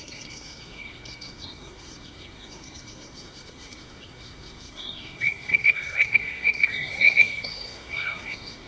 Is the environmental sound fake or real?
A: fake